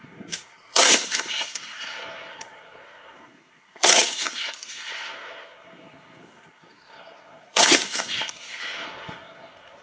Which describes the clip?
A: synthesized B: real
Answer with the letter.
A